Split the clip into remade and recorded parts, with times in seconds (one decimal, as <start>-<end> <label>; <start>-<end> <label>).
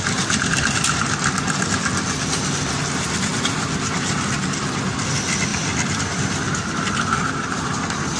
0.0-8.2 recorded